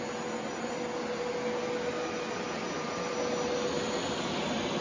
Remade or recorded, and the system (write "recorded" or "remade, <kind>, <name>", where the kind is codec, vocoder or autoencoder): recorded